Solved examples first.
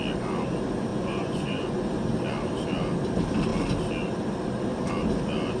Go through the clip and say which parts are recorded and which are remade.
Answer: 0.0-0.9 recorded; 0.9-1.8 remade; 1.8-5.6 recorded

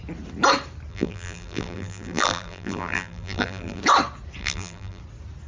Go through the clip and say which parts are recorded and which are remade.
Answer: 0.0-0.9 recorded; 0.9-3.8 remade; 3.8-4.4 recorded; 4.4-5.0 remade; 5.0-5.5 recorded